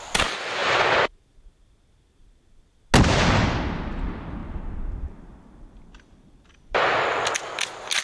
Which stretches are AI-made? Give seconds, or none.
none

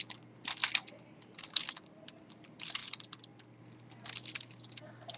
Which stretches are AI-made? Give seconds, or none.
none

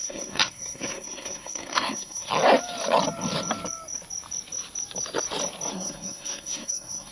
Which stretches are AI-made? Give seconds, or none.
0.0-2.3 (codec, SNAC); 5.7-7.1

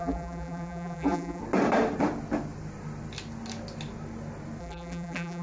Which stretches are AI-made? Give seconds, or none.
0.0-1.4 (vocoder, BigVGAN v2); 4.6-5.4

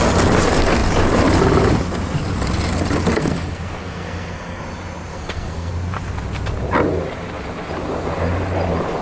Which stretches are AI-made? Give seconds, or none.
3.1-4.6 (codec, SNAC); 5.1-5.7